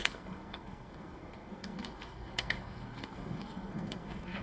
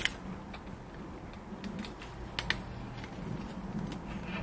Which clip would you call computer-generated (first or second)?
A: first